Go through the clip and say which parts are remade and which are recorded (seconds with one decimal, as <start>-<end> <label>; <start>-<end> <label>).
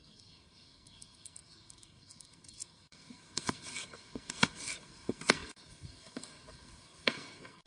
0.0-7.7 remade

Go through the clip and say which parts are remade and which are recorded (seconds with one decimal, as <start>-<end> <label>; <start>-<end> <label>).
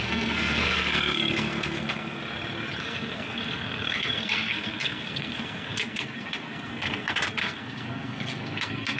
0.0-2.2 remade; 2.2-2.8 recorded; 2.8-9.0 remade